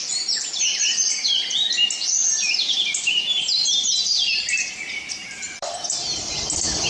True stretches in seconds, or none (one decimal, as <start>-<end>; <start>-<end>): 0.0-2.2; 5.7-6.9